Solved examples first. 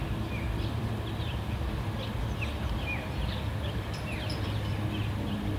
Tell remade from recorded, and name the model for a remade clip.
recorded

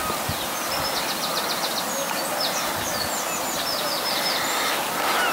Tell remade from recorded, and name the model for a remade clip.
recorded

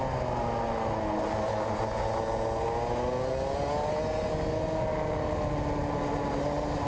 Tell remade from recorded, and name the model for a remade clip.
recorded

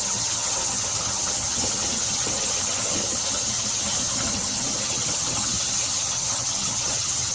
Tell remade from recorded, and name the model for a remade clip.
remade, vocoder, HiFi-GAN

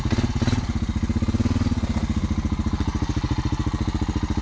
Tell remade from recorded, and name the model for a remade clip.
recorded